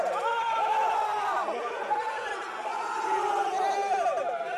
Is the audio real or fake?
real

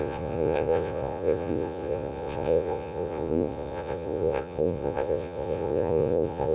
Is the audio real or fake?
fake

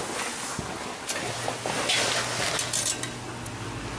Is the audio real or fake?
real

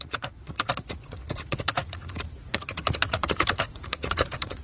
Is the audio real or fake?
fake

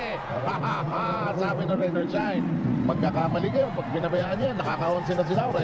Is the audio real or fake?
fake